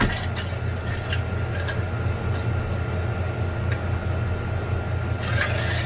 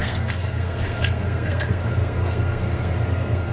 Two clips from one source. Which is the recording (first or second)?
first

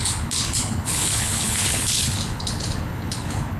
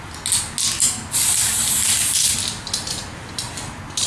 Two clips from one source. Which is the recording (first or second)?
second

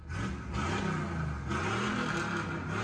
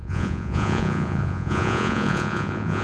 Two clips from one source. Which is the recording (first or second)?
first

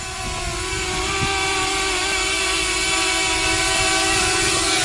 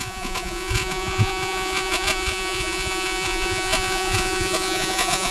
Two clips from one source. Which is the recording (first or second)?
first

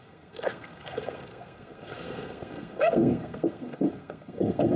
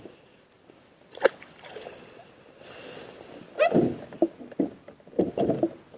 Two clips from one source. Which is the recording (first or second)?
second